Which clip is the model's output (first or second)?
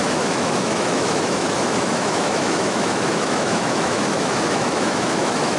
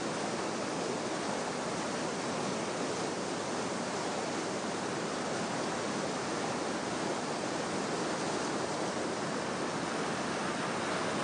first